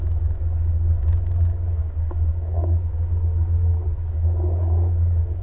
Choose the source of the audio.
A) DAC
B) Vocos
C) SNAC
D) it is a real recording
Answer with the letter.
A